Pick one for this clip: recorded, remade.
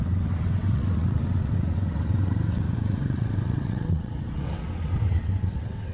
remade